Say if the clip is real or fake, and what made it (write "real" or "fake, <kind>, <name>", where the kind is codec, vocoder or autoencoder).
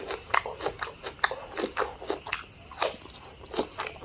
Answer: real